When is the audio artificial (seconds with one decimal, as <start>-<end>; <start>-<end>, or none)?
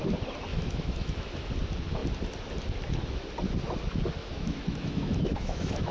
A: 0.5-1.5; 4.2-5.9